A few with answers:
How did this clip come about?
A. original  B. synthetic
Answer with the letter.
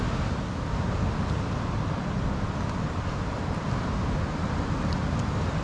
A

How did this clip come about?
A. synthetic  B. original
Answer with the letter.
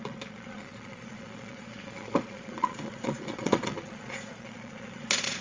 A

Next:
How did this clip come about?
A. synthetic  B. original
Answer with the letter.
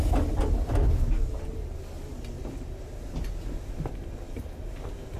B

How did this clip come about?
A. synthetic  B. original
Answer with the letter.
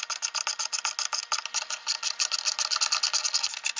B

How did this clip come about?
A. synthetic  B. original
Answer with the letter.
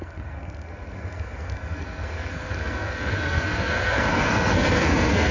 A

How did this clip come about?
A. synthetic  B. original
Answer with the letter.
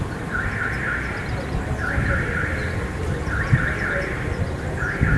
B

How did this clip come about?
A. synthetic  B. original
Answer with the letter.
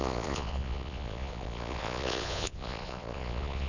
A